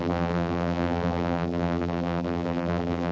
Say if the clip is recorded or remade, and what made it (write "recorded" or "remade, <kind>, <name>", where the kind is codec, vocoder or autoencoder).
remade, vocoder, BigVGAN v2